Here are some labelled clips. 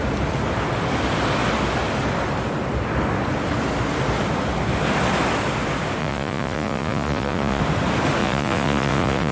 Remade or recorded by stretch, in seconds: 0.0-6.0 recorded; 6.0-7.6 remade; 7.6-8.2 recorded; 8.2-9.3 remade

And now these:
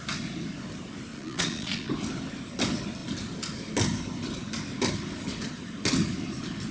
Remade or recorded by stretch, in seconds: 0.0-1.1 recorded; 1.1-1.9 remade; 1.9-6.7 recorded

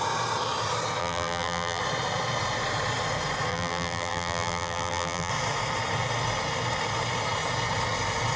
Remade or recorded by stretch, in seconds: 0.0-1.0 recorded; 1.0-1.8 remade; 1.8-3.5 recorded; 3.5-5.3 remade; 5.3-8.4 recorded

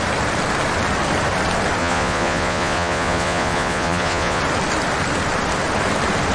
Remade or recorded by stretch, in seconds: 0.0-1.8 recorded; 1.8-4.4 remade; 4.4-6.3 recorded

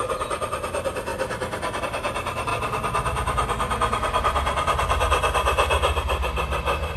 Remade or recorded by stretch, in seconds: 0.0-1.1 remade; 1.1-1.8 recorded; 1.8-2.5 remade; 2.5-7.0 recorded